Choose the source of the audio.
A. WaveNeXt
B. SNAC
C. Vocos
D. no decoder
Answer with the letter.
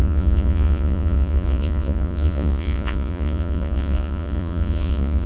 C